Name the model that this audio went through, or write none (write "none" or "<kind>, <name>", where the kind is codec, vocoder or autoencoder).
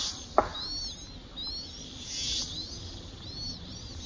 none